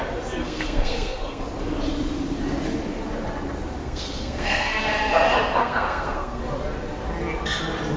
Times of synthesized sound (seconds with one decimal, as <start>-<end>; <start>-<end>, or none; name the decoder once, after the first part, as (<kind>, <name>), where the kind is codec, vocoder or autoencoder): 0.4-1.4 (codec, SNAC); 3.8-4.8; 5.6-6.4